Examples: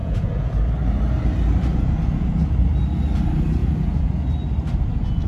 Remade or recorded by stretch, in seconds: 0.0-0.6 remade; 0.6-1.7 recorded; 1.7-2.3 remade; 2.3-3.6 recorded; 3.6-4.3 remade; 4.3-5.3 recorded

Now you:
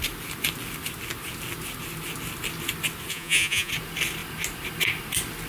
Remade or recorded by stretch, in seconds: 0.0-3.1 recorded; 3.1-3.7 remade; 3.7-5.5 recorded

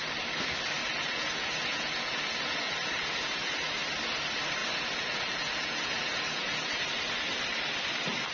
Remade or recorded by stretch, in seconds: 0.0-0.8 recorded; 0.8-3.8 remade; 3.8-4.6 recorded; 4.6-6.9 remade; 6.9-8.3 recorded

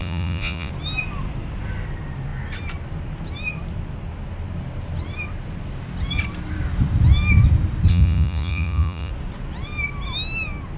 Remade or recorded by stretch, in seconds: 0.0-0.7 remade; 0.7-7.9 recorded; 7.9-9.1 remade; 9.1-10.8 recorded

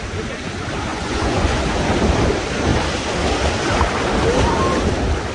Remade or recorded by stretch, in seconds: 0.0-0.9 recorded; 0.9-1.6 remade; 1.6-5.3 recorded

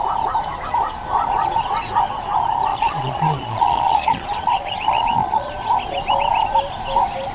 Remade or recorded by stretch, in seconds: 0.0-2.7 recorded; 2.7-5.5 remade; 5.5-7.3 recorded

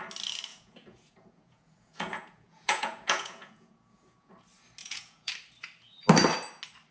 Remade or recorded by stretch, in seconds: 0.0-0.5 recorded; 0.5-4.3 remade; 4.3-4.8 recorded; 4.8-5.3 remade; 5.3-6.9 recorded